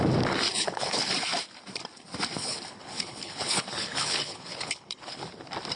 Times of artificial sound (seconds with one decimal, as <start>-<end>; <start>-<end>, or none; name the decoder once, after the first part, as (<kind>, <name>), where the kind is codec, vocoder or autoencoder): 0.5-1.1 (codec, HILCodec); 2.4-5.2